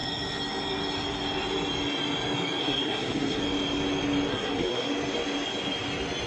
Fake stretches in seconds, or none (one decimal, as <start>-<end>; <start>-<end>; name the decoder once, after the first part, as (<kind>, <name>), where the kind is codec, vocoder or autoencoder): 2.6-3.4 (codec, SNAC); 4.3-4.9